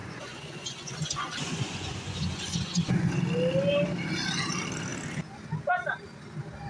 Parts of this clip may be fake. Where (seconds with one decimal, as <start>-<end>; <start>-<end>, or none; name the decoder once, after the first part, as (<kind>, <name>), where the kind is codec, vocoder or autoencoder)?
0.0-3.1 (vocoder, Vocos)